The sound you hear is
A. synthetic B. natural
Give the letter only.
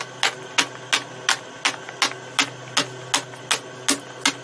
B